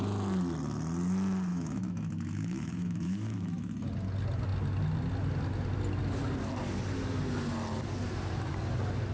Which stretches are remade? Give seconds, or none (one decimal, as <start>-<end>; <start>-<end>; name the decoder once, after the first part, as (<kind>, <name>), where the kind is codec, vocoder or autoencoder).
1.5-3.7 (autoencoder, DAC-VAE)